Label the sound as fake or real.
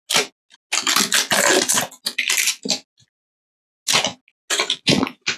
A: real